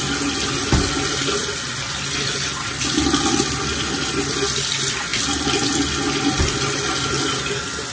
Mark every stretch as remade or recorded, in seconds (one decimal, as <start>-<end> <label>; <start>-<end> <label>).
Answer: 0.0-7.9 recorded